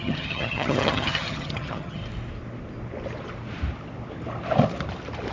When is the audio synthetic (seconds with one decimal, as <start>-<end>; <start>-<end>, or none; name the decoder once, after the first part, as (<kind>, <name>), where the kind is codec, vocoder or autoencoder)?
0.0-2.0 (vocoder, HiFi-GAN)